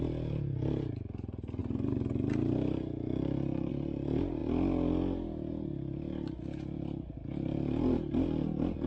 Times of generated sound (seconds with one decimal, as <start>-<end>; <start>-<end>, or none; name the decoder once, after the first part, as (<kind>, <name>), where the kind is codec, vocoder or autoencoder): none